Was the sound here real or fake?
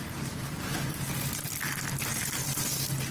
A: real